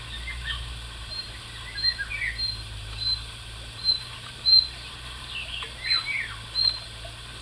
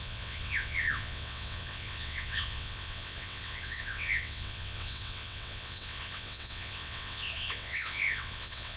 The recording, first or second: first